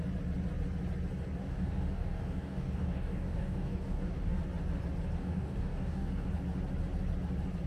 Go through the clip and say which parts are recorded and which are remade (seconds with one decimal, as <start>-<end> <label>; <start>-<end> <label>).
0.0-1.4 recorded; 1.4-4.4 remade; 4.4-5.2 recorded; 5.2-6.3 remade; 6.3-7.7 recorded